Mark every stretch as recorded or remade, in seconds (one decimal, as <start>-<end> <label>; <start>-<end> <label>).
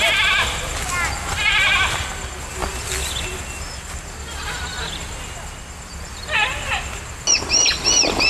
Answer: 0.0-8.3 recorded